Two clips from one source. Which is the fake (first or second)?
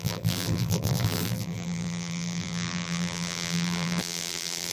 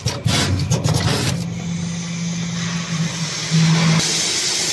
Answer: first